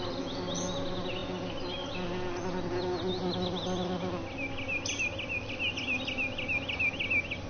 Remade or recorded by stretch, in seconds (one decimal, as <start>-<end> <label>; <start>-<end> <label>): 0.0-7.5 recorded